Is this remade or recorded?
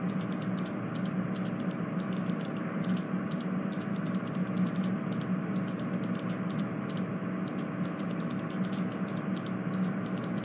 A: recorded